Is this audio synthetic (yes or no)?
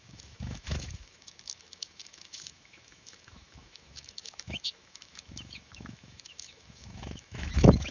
yes